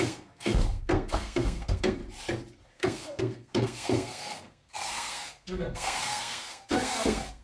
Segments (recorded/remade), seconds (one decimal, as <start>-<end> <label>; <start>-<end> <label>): 0.0-2.0 remade; 2.0-2.7 recorded; 2.7-7.4 remade